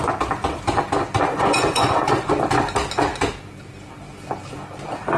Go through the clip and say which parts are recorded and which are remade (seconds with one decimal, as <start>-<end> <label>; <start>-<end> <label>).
0.0-1.3 recorded; 1.3-2.3 remade; 2.3-5.2 recorded